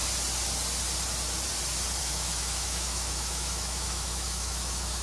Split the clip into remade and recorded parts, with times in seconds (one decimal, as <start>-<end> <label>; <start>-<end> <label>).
0.0-2.0 recorded; 2.0-5.0 remade